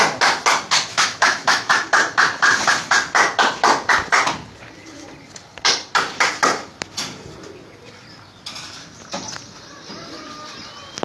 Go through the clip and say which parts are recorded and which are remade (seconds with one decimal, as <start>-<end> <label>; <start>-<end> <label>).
0.0-0.9 recorded; 0.9-1.7 remade; 1.7-11.0 recorded